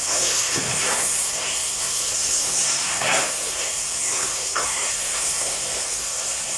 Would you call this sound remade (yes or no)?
yes